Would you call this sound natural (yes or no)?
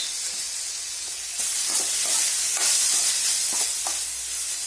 yes